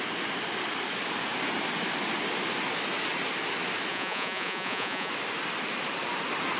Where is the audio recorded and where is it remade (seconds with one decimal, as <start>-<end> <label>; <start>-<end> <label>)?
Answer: 0.0-3.9 recorded; 3.9-5.1 remade; 5.1-6.6 recorded